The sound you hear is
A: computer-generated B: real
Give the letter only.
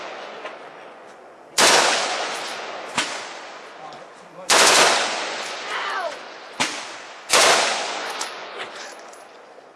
A